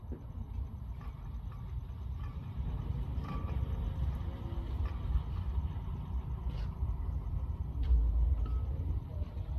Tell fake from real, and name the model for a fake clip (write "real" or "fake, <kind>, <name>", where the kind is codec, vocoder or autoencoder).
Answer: real